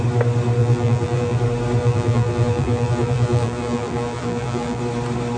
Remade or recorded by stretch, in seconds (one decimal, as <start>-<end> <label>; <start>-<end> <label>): 0.0-0.6 recorded; 0.6-1.4 remade; 1.4-1.8 recorded; 1.8-4.8 remade; 4.8-5.4 recorded